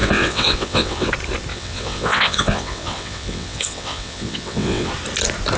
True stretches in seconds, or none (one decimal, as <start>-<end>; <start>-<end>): 1.1-1.5; 4.9-5.6